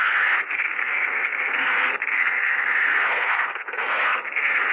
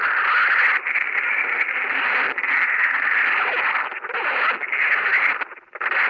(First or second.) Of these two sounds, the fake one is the first